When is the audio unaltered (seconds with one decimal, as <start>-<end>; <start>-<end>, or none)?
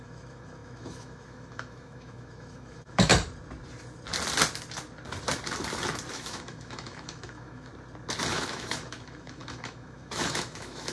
3.1-6.1; 7.7-8.3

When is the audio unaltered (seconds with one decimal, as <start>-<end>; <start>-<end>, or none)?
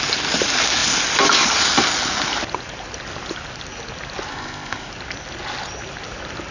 0.0-4.3; 4.9-6.5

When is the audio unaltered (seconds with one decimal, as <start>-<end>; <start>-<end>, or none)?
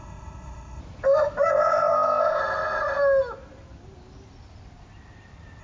0.8-1.5; 2.4-5.6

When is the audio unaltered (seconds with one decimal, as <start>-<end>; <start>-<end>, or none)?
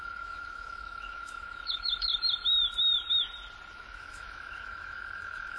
2.1-3.7